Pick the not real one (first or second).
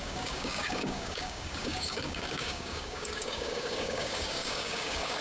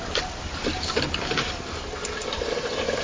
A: first